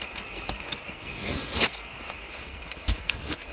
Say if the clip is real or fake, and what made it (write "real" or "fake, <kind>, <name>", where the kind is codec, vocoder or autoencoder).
fake, codec, SNAC